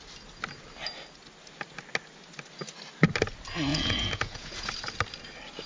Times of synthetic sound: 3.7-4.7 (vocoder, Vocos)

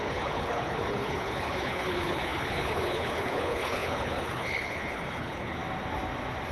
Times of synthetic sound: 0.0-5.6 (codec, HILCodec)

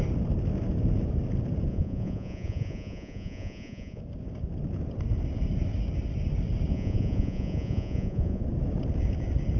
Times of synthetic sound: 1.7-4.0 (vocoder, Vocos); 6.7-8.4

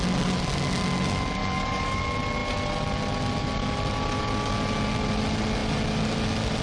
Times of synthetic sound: 1.4-2.0 (codec, DAC)

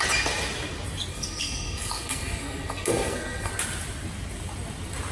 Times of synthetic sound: 1.1-3.5 (codec, SNAC)

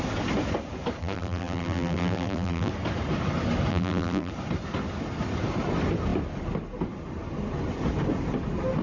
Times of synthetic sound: 1.0-2.7 (vocoder, BigVGAN v2); 3.7-4.3

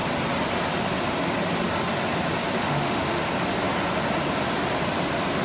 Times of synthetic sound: 2.6-3.3 (autoencoder, DAC-VAE)

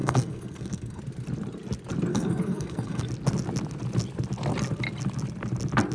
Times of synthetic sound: 0.0-1.0 (codec, SNAC); 2.1-3.0